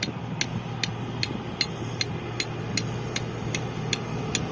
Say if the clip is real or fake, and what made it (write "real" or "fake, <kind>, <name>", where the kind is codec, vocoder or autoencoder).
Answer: real